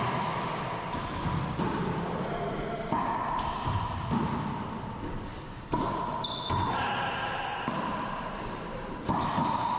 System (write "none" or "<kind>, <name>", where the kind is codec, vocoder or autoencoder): vocoder, BigVGAN v2